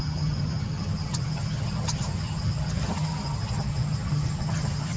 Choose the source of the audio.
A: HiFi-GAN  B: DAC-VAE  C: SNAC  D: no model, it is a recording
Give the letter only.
A